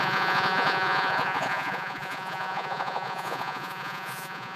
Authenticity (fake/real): fake